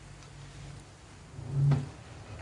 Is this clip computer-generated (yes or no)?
no